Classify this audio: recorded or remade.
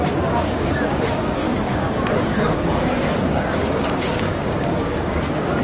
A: remade